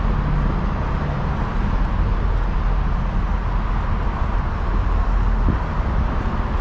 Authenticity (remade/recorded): recorded